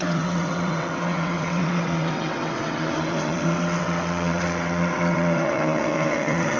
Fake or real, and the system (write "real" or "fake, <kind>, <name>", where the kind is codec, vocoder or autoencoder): fake, vocoder, WaveNeXt